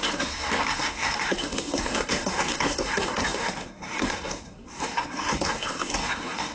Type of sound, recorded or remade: remade